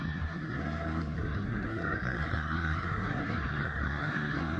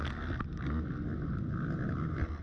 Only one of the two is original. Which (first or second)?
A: second